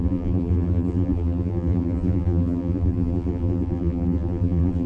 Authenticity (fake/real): fake